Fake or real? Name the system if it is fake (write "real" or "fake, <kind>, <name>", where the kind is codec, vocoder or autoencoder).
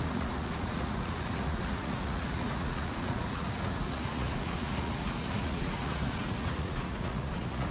fake, vocoder, Vocos